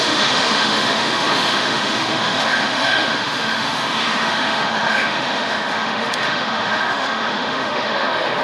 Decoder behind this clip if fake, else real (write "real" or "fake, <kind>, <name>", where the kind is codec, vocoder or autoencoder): fake, autoencoder, DAC-VAE